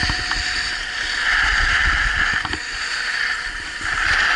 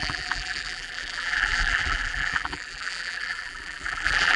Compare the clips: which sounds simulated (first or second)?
second